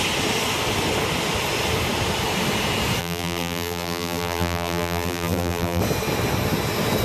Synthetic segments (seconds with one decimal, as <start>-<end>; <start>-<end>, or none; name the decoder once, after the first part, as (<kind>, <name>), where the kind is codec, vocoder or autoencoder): 3.0-5.8 (vocoder, BigVGAN v2)